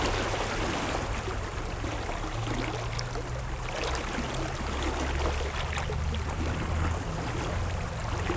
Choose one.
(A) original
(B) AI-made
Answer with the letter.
A